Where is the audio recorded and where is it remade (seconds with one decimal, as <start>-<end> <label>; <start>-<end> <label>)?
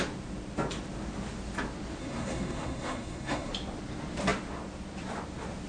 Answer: 0.0-2.0 recorded; 2.0-3.5 remade; 3.5-5.7 recorded